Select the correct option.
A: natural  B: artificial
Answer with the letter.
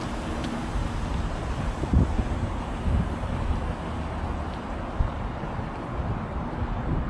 A